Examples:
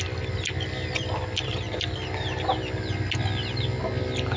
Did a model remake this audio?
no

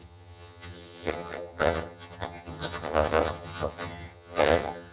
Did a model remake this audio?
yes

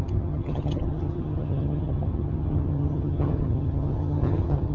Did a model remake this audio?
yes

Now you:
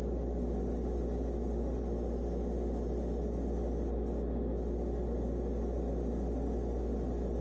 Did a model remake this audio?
no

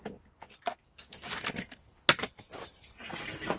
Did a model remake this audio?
no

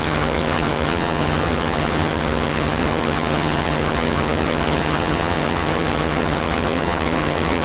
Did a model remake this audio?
yes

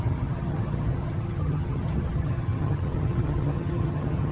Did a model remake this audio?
yes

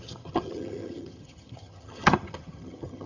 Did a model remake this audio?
yes